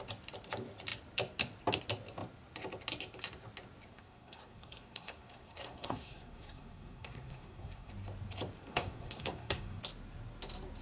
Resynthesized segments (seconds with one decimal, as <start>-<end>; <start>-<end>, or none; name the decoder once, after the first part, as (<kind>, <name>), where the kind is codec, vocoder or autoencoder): 3.9-7.9 (codec, SNAC); 8.7-9.8